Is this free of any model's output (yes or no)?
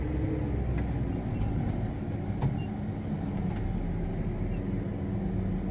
yes